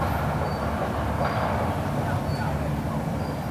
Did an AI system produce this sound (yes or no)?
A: no